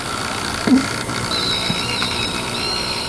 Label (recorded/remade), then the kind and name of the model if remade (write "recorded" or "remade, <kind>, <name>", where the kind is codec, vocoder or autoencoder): recorded